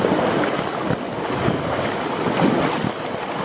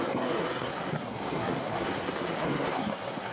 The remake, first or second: second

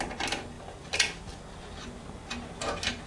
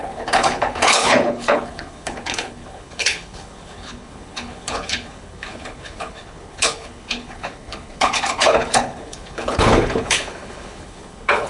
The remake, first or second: second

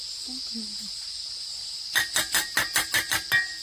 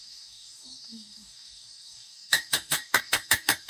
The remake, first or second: second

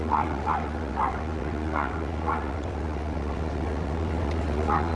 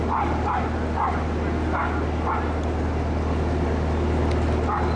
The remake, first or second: first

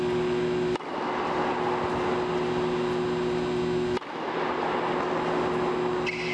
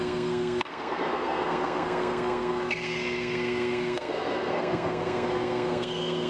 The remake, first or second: second